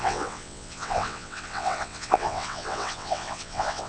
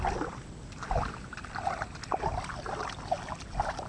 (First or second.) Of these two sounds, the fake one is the first